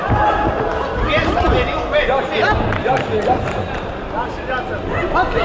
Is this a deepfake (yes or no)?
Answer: no